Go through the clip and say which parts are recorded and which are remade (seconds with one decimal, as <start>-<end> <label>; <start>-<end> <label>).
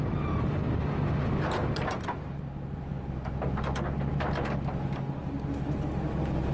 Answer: 0.0-6.5 recorded